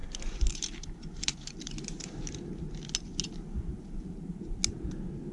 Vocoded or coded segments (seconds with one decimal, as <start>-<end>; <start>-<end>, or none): 0.0-2.2; 3.7-4.4